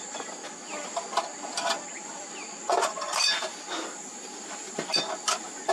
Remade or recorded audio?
recorded